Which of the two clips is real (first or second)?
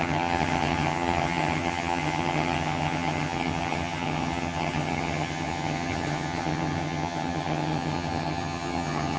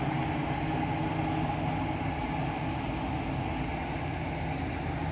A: second